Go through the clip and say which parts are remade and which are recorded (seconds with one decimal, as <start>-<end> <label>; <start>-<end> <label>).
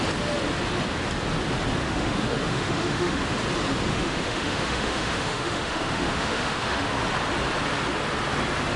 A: 0.0-1.8 recorded; 1.8-3.2 remade; 3.2-3.9 recorded; 3.9-6.9 remade; 6.9-8.8 recorded